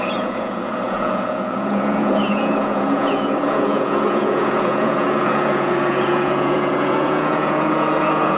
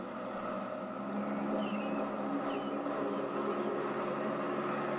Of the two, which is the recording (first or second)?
second